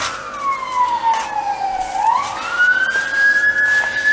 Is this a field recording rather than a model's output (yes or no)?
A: yes